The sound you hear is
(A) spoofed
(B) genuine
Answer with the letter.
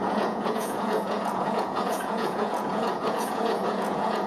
A